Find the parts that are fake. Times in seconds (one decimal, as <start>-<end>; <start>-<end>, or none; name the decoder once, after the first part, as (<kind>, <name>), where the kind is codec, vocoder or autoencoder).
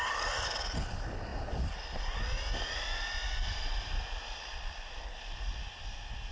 none